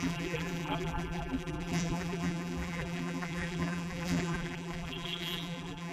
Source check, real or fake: fake